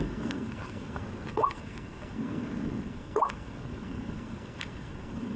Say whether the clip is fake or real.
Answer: fake